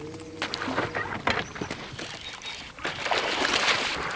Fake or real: real